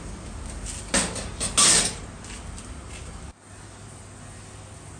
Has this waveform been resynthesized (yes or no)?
no